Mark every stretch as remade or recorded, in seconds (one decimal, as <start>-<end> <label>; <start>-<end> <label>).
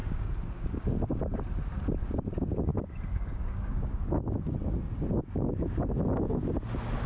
0.0-1.2 remade; 1.2-2.7 recorded; 2.7-4.0 remade; 4.0-7.1 recorded